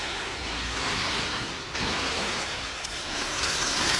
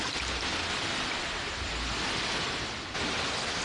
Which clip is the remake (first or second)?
first